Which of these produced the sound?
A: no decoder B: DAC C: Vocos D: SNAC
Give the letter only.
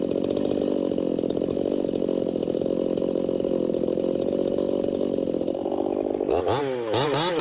A